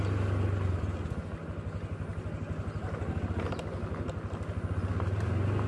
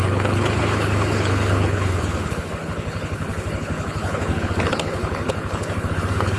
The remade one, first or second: second